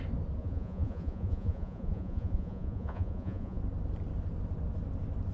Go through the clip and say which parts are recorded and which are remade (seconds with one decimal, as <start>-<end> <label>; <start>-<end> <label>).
0.0-0.4 recorded; 0.4-3.6 remade; 3.6-5.3 recorded

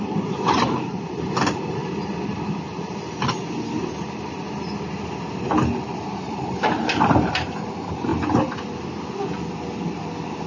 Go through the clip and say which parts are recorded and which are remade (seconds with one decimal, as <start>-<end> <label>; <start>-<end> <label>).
0.0-1.8 remade; 1.8-6.1 recorded; 6.1-8.1 remade; 8.1-10.5 recorded